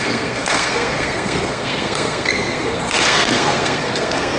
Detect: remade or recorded remade